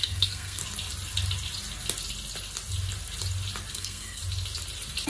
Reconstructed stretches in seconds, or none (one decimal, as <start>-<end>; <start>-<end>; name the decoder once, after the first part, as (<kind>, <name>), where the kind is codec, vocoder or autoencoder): 0.0-0.6 (codec, SNAC); 3.7-4.2